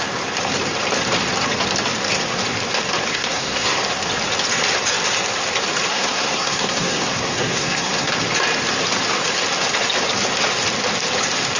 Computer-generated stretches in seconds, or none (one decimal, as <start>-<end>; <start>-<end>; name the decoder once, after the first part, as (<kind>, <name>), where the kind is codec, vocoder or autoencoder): 3.1-3.8 (codec, SNAC); 5.9-8.1